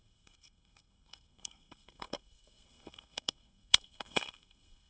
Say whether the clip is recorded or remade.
remade